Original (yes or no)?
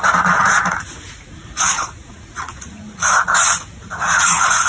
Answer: no